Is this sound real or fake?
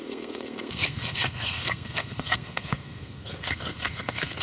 fake